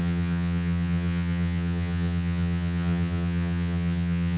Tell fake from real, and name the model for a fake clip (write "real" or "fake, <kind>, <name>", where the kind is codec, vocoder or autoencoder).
fake, vocoder, HiFi-GAN